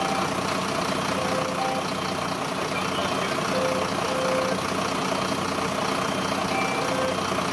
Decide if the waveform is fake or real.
real